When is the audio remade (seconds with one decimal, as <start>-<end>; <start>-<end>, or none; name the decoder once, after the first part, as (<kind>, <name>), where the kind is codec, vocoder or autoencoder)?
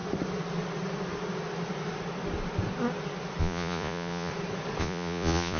3.4-4.3 (vocoder, Vocos); 4.8-5.6